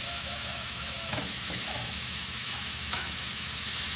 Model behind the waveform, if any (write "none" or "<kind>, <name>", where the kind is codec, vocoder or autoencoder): autoencoder, DAC-VAE